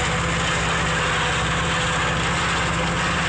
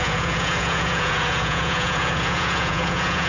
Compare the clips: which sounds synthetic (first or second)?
second